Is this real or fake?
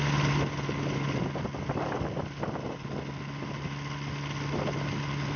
real